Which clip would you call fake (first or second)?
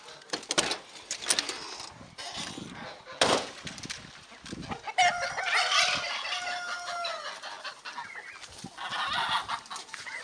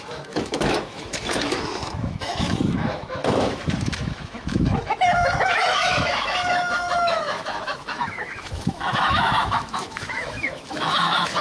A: second